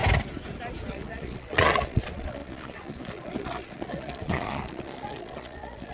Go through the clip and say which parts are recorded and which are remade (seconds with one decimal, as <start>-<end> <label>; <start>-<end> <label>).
0.0-0.9 recorded; 0.9-5.9 remade